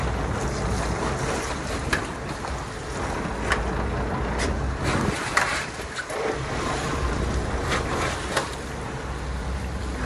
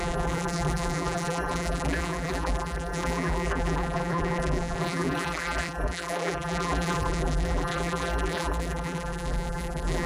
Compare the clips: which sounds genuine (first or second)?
first